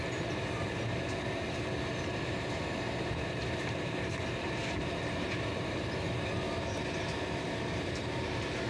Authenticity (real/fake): fake